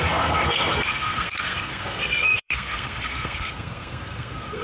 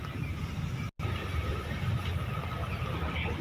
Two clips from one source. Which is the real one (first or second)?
second